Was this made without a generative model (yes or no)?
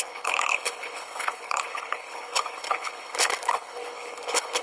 no